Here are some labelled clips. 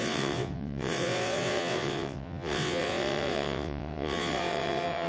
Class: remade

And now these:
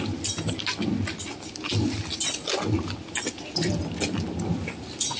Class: recorded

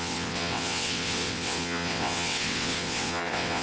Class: remade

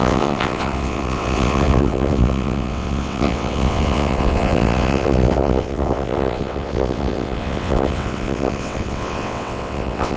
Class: remade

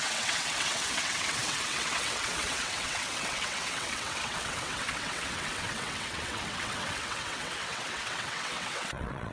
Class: remade